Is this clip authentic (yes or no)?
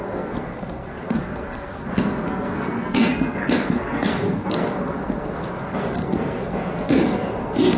no